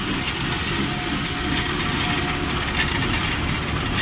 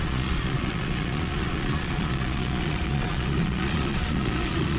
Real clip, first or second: first